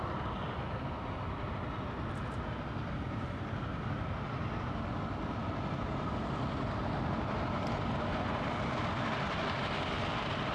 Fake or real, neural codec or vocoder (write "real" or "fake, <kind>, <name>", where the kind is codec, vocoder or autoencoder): real